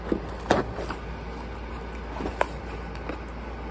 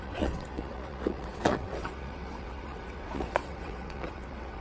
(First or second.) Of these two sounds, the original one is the first